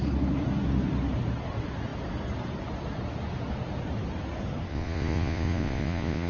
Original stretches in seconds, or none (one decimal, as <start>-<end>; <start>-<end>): 0.0-4.7